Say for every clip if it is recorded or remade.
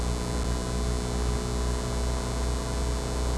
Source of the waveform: recorded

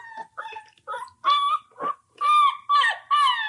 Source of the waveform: recorded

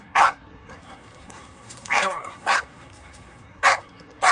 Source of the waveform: remade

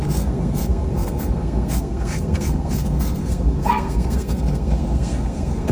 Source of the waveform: remade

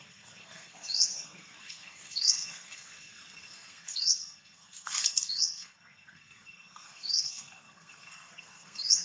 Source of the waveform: remade